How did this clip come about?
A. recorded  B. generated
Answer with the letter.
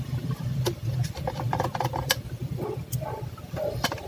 B